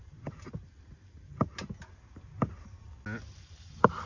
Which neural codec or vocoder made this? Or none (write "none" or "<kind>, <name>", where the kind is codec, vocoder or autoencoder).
none